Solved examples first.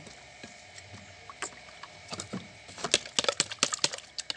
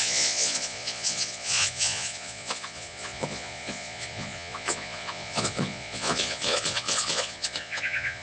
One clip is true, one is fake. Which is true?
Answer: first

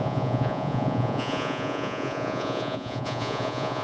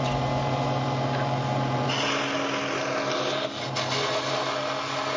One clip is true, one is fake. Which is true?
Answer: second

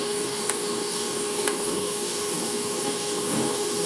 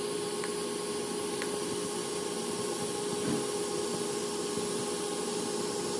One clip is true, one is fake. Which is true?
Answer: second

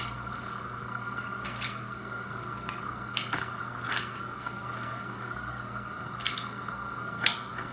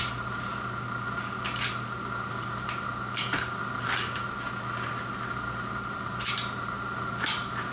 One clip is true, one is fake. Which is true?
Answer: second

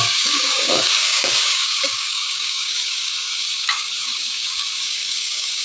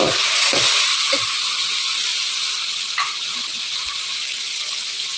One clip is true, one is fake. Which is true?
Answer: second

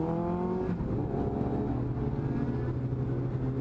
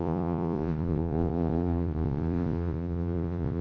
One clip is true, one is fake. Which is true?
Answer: first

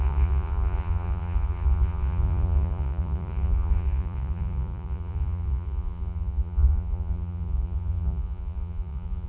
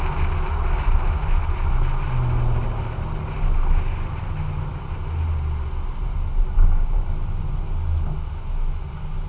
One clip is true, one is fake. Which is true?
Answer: second